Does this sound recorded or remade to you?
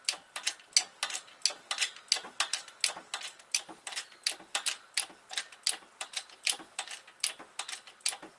recorded